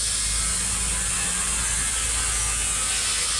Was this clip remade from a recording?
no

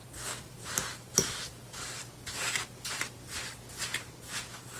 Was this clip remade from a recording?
no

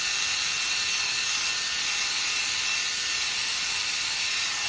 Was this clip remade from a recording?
no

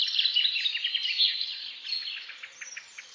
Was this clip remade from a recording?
no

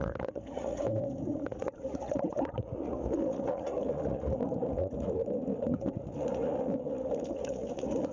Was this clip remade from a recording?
yes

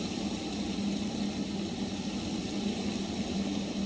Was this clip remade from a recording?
no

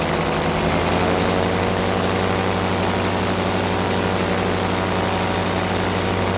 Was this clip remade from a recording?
no